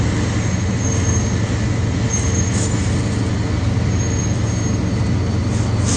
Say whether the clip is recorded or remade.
recorded